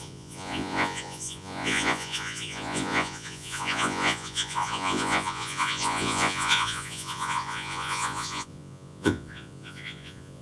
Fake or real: fake